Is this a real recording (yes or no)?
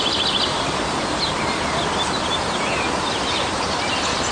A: yes